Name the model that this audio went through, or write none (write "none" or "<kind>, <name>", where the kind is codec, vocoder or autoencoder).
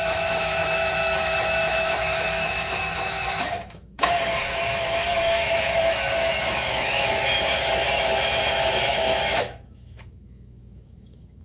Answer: autoencoder, DAC-VAE